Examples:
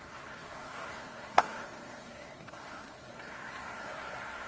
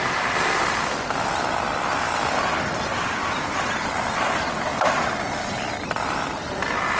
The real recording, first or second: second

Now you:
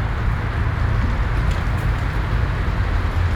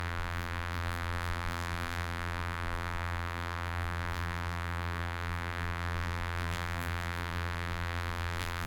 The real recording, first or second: first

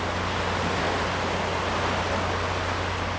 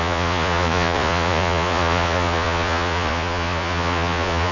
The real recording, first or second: first